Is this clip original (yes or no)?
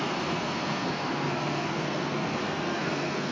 no